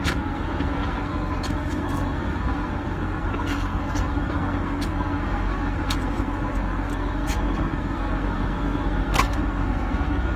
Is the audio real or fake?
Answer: fake